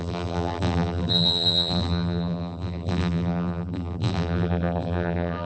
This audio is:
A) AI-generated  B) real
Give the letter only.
A